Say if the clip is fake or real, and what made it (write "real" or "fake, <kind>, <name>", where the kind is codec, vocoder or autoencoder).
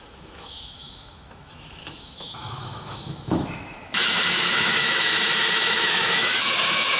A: fake, autoencoder, DAC-VAE